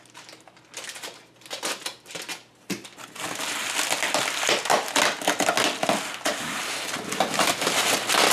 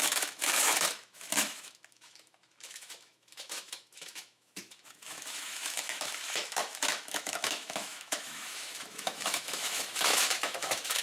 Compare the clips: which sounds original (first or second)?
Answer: first